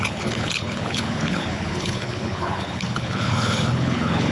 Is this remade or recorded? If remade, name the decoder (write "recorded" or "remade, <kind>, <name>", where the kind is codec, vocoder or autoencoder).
remade, codec, HILCodec